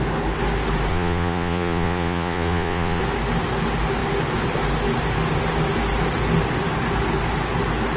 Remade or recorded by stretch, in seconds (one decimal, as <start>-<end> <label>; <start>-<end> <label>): 0.0-0.9 recorded; 0.9-3.0 remade; 3.0-8.0 recorded